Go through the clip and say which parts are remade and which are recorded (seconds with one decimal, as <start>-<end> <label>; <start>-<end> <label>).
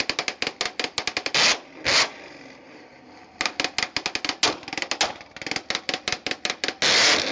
0.0-7.3 recorded